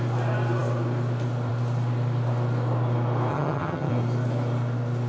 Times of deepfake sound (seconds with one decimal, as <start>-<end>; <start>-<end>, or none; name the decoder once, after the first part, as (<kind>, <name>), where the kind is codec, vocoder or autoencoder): 3.3-3.9 (vocoder, HiFi-GAN)